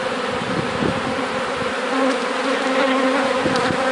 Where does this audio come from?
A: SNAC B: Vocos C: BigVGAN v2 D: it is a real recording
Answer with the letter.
D